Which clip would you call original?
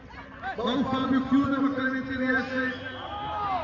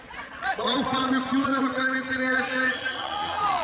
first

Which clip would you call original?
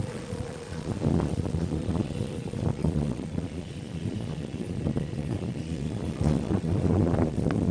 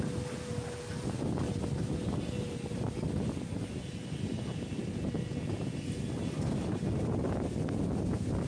second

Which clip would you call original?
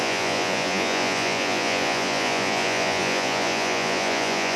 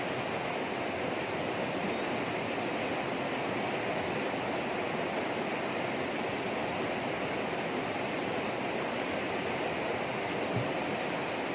second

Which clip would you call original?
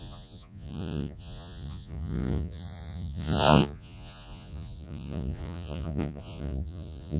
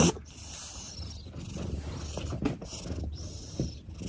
second